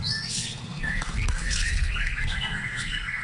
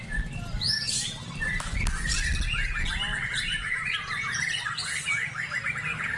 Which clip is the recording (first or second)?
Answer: second